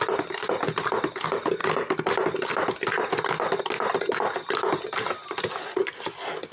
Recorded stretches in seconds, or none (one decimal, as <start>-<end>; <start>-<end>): 0.0-6.5